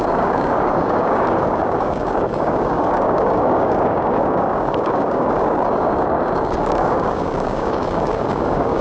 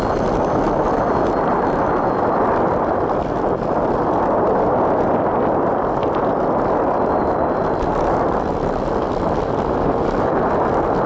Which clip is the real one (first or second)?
second